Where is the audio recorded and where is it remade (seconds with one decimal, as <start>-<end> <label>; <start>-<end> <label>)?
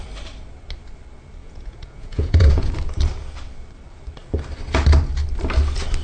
0.0-1.4 recorded; 1.4-2.7 remade; 2.7-6.0 recorded